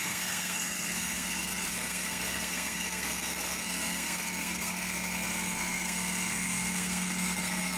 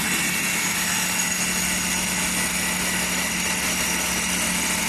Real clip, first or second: second